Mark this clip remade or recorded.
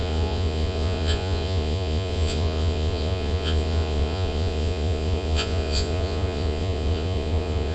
remade